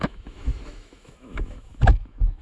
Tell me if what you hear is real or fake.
fake